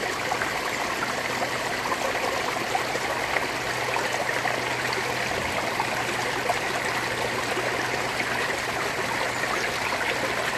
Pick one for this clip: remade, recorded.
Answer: recorded